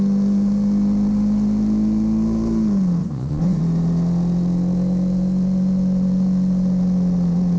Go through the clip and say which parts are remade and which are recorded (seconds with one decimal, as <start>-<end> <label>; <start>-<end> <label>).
0.0-3.0 recorded; 3.0-3.6 remade; 3.6-7.6 recorded